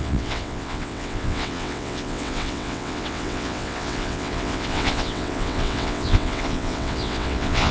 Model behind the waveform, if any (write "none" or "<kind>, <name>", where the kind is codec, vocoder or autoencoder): vocoder, WaveNeXt